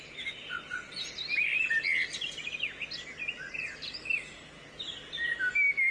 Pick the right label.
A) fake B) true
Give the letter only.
B